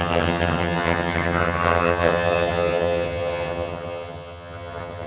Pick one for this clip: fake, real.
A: fake